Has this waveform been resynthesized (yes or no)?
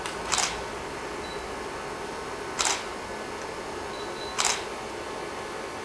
no